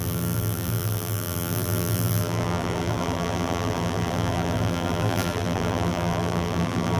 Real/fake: fake